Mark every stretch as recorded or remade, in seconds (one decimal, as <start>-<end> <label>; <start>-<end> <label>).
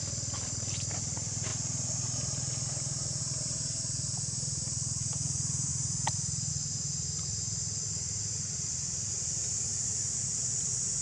0.0-1.5 remade; 1.5-3.2 recorded; 3.2-5.7 remade; 5.7-6.5 recorded; 6.5-11.0 remade